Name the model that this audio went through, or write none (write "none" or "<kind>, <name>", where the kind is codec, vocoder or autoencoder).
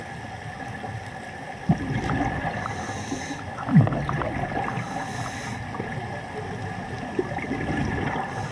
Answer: none